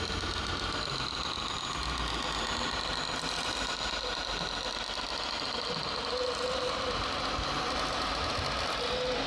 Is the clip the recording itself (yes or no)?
yes